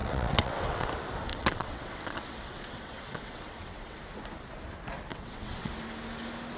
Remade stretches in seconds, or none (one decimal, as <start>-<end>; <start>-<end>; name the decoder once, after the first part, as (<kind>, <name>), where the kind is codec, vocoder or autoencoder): 0.0-0.9 (vocoder, WaveNeXt); 1.3-4.0; 5.1-5.7